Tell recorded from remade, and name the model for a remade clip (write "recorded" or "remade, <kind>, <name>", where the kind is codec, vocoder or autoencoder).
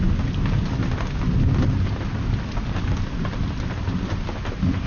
recorded